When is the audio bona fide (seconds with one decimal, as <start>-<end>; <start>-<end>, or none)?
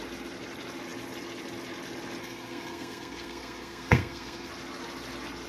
0.0-2.2; 4.5-5.5